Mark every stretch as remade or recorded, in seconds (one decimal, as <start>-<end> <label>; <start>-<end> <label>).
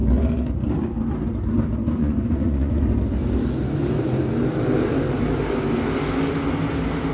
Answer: 0.0-2.0 recorded; 2.0-2.8 remade; 2.8-7.1 recorded